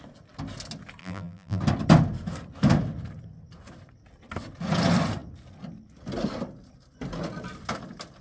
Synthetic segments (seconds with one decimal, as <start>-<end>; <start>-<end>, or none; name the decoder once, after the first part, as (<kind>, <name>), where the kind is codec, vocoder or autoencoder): 1.0-1.6 (vocoder, BigVGAN v2)